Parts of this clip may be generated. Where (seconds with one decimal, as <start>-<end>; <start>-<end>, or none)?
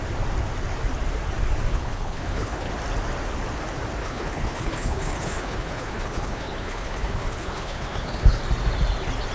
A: 1.7-2.7; 4.0-8.4